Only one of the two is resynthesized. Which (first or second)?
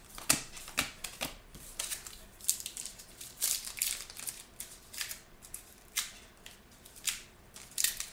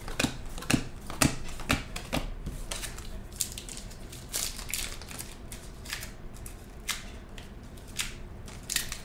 first